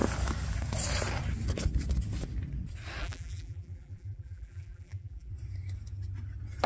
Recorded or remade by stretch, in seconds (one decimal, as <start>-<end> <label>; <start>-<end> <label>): 0.0-3.0 recorded; 3.0-5.3 remade; 5.3-6.7 recorded